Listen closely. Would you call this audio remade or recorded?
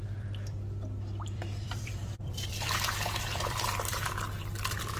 remade